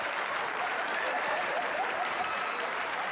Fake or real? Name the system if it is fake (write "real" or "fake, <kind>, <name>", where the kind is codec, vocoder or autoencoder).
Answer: fake, vocoder, BigVGAN v2